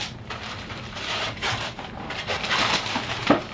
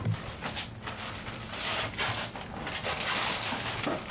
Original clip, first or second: second